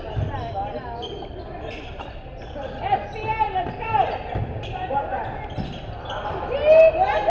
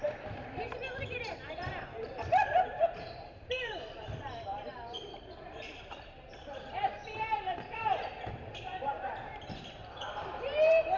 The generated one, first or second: second